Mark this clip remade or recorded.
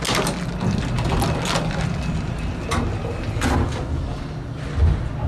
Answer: recorded